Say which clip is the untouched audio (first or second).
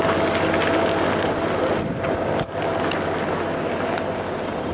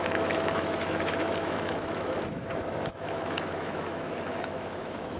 first